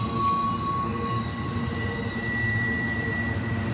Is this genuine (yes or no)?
yes